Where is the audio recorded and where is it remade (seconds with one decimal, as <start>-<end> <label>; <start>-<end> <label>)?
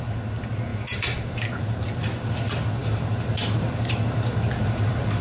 0.0-0.7 recorded; 0.7-2.3 remade; 2.3-2.8 recorded; 2.8-5.2 remade